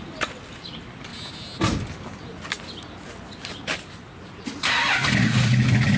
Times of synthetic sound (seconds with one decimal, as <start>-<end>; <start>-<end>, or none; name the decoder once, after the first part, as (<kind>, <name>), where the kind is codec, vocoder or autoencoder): none